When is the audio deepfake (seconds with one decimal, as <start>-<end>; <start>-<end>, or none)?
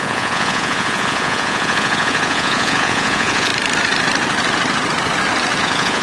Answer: 0.0-3.5; 5.6-6.0